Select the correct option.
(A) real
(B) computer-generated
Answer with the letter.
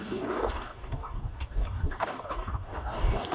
B